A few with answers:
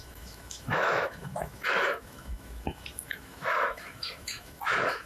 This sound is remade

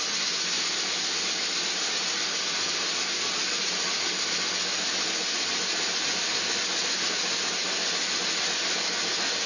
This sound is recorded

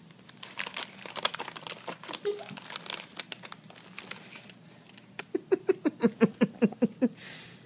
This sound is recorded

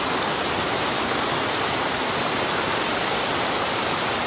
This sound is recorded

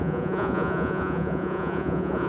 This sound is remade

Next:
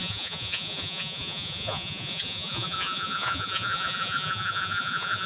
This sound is remade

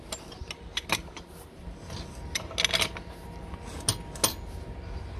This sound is recorded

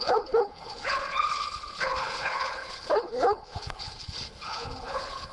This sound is remade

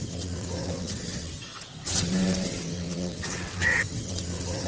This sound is remade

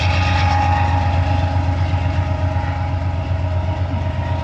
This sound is recorded